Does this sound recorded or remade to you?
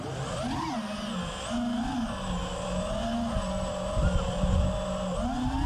recorded